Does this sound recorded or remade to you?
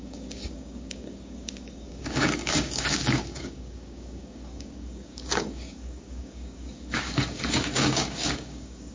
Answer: remade